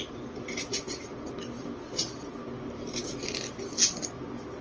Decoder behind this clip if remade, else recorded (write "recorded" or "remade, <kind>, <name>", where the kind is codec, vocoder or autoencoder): recorded